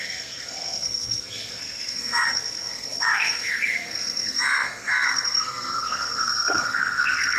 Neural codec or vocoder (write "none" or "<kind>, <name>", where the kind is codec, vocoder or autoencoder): codec, SNAC